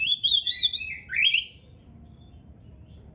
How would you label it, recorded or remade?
remade